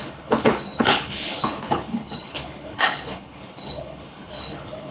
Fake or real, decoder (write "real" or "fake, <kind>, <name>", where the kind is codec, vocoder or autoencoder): fake, codec, HILCodec